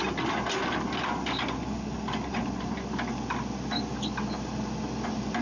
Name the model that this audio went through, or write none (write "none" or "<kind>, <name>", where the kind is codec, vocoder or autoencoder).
none